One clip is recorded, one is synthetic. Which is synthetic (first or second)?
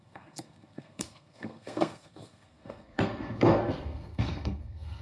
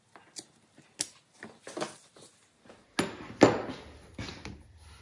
first